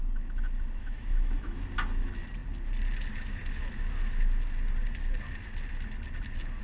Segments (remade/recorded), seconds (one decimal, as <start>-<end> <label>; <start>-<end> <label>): 0.0-0.8 recorded; 0.8-1.6 remade; 1.6-6.6 recorded